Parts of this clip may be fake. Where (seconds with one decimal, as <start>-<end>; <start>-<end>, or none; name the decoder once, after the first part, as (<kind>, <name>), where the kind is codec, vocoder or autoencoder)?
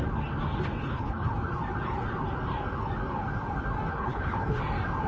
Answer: 0.8-1.3 (codec, HILCodec); 3.9-4.6